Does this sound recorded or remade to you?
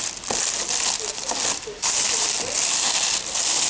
recorded